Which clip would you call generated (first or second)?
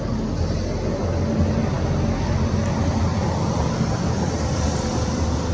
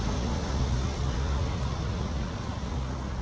second